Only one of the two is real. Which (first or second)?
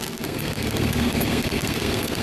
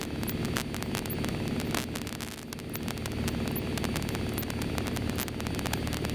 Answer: second